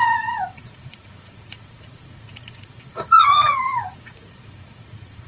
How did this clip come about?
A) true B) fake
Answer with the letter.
B